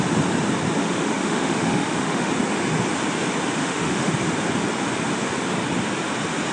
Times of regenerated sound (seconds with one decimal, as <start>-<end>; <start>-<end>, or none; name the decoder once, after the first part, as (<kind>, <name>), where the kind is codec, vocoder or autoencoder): 0.8-2.3 (autoencoder, DAC-VAE); 3.6-4.1